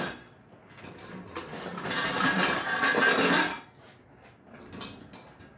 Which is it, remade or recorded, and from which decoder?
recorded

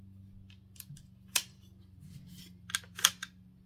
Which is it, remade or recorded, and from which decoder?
recorded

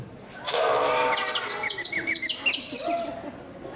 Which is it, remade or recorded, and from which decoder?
recorded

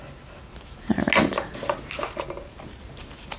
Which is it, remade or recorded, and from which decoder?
recorded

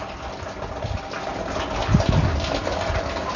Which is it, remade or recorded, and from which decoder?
recorded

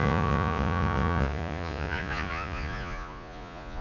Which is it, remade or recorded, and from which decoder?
remade, vocoder, Vocos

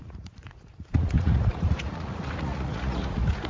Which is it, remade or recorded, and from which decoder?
remade, vocoder, Vocos